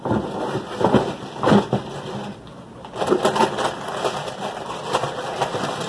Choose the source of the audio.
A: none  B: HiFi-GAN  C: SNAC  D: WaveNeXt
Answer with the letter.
A